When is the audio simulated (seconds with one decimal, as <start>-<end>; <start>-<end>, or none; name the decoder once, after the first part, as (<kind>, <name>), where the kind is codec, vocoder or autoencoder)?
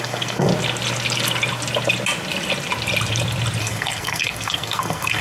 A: 0.0-0.5 (codec, SNAC); 3.6-5.2